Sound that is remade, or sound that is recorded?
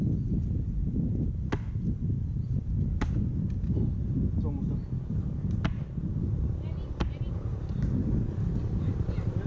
recorded